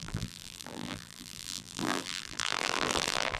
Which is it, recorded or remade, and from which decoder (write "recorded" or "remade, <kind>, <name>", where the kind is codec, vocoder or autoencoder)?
remade, vocoder, BigVGAN v2